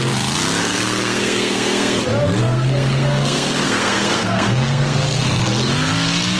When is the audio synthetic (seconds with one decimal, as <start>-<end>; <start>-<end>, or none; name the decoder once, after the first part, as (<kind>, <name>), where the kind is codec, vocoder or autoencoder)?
0.6-2.0 (codec, SNAC); 2.4-5.2